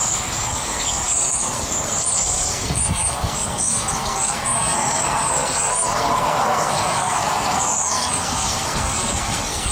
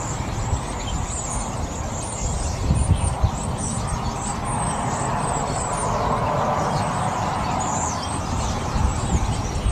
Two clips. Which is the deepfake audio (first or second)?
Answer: first